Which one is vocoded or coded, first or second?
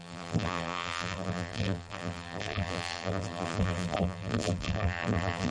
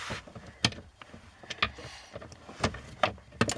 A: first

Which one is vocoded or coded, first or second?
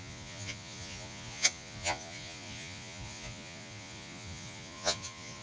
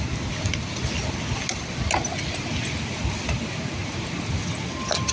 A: first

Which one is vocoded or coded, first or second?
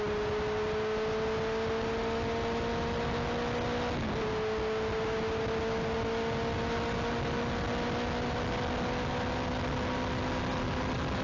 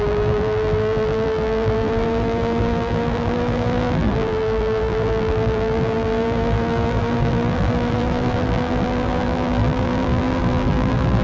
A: second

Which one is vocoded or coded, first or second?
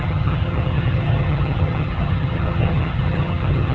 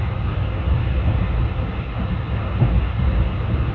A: first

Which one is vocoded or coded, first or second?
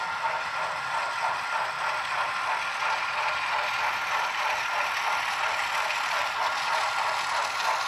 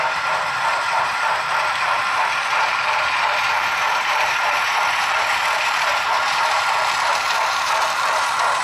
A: second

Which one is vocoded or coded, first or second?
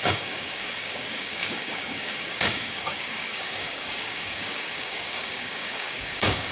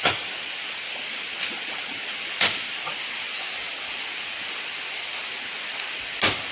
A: first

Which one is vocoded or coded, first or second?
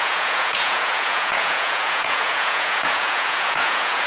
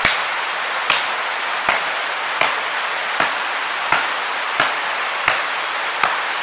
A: first